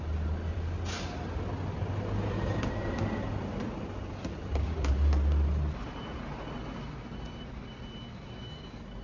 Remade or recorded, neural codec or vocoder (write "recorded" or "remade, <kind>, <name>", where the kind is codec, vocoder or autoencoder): recorded